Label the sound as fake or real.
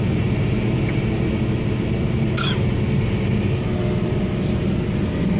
real